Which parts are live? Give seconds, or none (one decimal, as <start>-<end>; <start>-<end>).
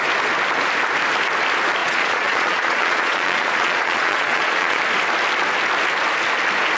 0.0-1.8; 4.8-6.8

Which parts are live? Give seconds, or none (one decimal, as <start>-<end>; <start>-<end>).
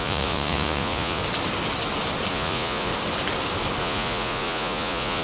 1.2-2.3; 2.9-3.8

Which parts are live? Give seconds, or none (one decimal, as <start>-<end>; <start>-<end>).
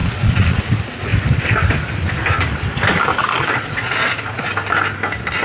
0.6-3.1; 4.5-5.4